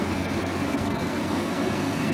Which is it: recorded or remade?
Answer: remade